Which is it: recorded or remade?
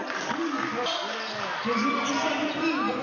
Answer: recorded